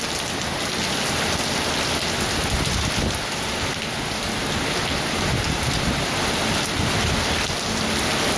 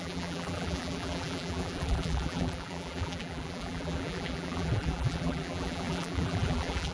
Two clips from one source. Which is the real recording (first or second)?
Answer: first